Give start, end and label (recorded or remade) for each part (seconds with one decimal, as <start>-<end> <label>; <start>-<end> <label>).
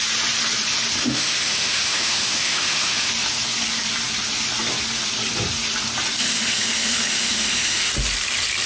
0.0-1.0 recorded; 1.0-3.1 remade; 3.1-6.2 recorded; 6.2-7.9 remade; 7.9-8.7 recorded